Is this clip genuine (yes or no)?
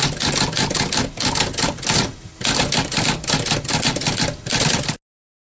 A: yes